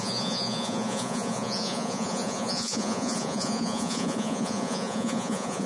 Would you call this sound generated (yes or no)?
yes